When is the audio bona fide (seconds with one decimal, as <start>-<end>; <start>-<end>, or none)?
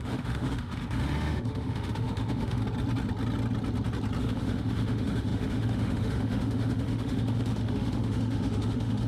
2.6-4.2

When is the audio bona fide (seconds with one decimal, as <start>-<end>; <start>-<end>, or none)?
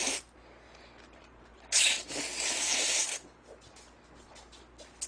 0.0-5.1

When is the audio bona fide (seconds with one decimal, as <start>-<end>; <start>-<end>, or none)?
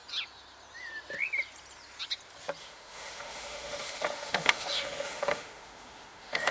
0.0-2.6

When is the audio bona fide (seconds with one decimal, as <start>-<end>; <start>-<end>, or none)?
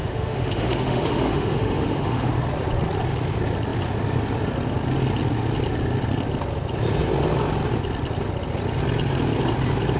2.3-10.0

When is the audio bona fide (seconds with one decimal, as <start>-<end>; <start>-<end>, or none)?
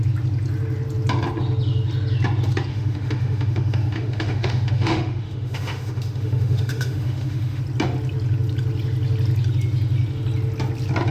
0.0-2.7; 7.6-11.1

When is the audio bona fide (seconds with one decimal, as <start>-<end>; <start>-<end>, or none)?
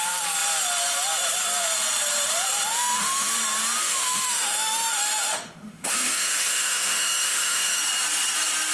0.0-2.7; 3.3-3.8; 7.8-8.7